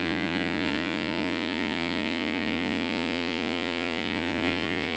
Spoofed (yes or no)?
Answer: yes